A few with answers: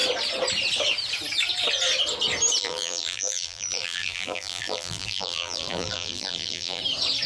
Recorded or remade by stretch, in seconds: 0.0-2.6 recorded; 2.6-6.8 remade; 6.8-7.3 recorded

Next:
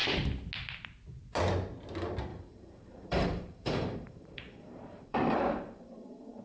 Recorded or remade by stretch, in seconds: 0.0-2.3 recorded; 2.3-6.4 remade

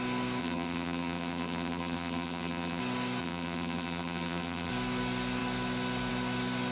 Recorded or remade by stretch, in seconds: 0.0-0.4 recorded; 0.4-2.8 remade; 2.8-3.2 recorded; 3.2-4.7 remade; 4.7-6.7 recorded

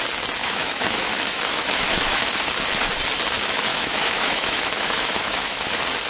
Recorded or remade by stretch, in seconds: 0.0-0.4 recorded; 0.4-2.2 remade; 2.2-3.7 recorded; 3.7-5.6 remade; 5.6-6.1 recorded

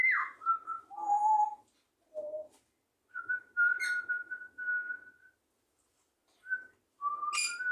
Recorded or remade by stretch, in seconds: 0.0-7.7 recorded

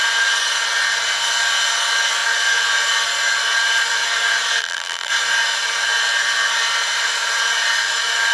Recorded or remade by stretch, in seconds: 0.0-4.6 recorded; 4.6-5.1 remade; 5.1-8.3 recorded